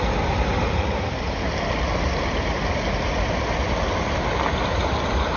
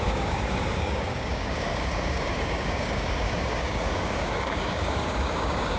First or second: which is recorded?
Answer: first